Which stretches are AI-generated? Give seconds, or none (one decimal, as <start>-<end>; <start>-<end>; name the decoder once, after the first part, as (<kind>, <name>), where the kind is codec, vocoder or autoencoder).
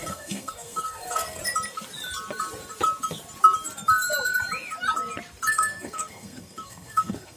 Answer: 0.0-1.4 (codec, SNAC); 5.5-7.4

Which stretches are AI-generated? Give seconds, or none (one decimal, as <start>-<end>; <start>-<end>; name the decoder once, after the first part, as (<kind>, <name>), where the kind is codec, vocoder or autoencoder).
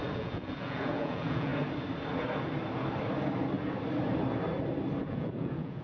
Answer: 0.0-1.5 (vocoder, Vocos); 5.0-5.8